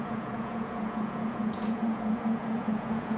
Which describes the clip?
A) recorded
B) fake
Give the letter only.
B